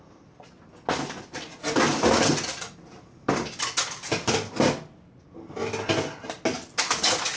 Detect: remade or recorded recorded